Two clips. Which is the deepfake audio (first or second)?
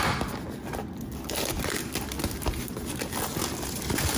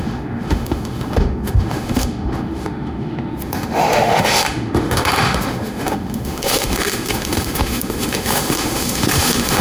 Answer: second